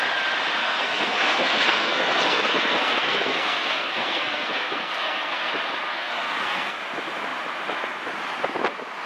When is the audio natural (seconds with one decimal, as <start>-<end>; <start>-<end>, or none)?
0.0-0.6; 5.5-5.9; 6.8-9.1